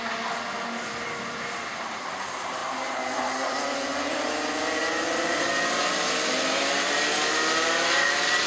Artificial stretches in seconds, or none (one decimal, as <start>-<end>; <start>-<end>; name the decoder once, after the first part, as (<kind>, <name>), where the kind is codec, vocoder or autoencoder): none